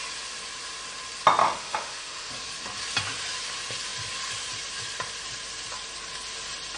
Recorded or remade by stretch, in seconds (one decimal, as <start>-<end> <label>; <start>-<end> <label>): 0.0-1.4 recorded; 1.4-2.3 remade; 2.3-6.8 recorded